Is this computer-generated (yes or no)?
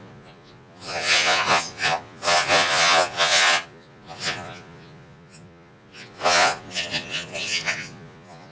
yes